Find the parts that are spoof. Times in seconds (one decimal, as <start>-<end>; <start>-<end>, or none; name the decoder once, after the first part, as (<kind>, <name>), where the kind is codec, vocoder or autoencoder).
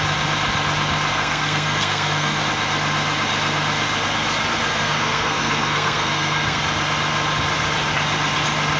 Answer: 1.1-2.4 (codec, SNAC); 4.7-6.6